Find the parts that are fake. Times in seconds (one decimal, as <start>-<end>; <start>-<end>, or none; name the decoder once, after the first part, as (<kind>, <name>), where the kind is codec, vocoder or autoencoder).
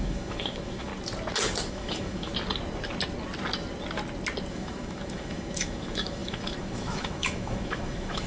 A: 0.0-0.9 (autoencoder, DAC-VAE); 1.7-2.3; 4.5-8.3